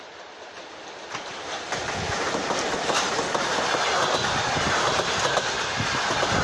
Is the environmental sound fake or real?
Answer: real